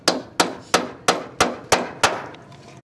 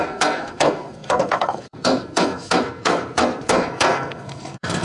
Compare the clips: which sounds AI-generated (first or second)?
second